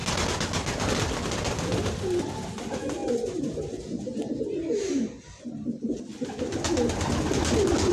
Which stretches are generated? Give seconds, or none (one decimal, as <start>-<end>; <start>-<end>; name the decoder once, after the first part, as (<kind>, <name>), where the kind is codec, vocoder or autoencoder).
none